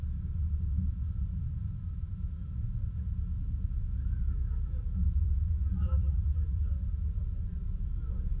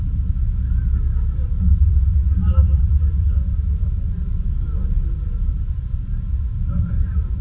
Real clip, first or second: second